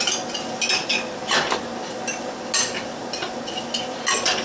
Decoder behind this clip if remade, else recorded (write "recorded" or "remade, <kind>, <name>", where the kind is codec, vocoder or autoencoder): recorded